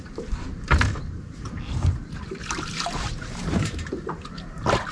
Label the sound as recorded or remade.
remade